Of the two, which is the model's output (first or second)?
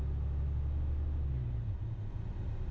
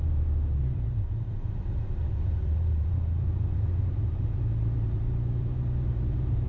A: second